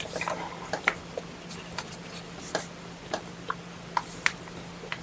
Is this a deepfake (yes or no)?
yes